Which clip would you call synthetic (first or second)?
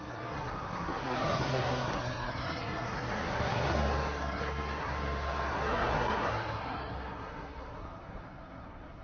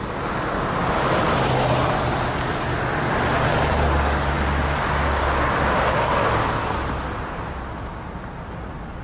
first